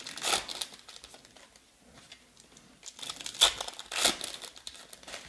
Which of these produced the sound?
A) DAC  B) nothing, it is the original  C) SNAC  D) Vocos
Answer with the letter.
B